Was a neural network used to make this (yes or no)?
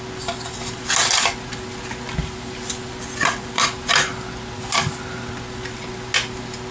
no